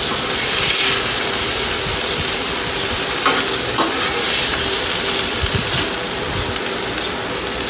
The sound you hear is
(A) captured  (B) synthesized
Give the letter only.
A